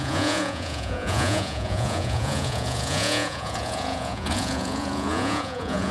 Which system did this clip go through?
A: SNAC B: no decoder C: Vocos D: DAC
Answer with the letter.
C